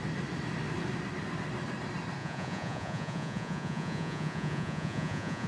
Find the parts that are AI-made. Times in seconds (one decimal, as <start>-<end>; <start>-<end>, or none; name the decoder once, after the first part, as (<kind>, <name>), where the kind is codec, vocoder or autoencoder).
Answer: 2.2-5.5 (vocoder, Vocos)